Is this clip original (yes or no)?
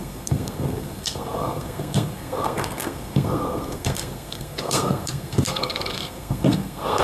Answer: no